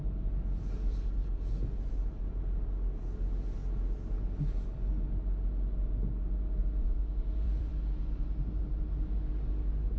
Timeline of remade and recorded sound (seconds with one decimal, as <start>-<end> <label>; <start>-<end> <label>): 0.0-6.6 recorded; 6.6-7.7 remade; 7.7-10.0 recorded